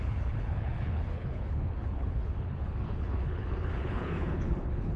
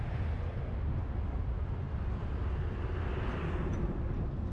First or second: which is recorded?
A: second